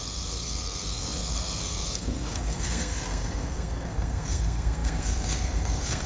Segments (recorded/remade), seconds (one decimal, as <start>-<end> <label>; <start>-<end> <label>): 0.0-6.1 remade